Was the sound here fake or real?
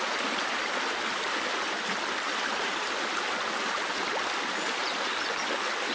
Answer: real